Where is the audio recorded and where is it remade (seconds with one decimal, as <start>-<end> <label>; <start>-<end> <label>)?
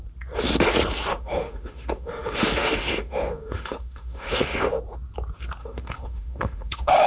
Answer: 0.0-1.1 recorded; 1.1-4.8 remade; 4.8-5.6 recorded; 5.6-7.1 remade